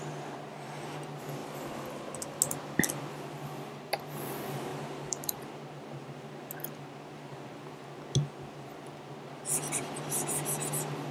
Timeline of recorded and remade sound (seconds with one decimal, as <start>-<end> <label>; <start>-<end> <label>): 0.0-4.7 recorded; 4.7-5.4 remade; 5.4-7.3 recorded; 7.3-7.9 remade; 7.9-11.1 recorded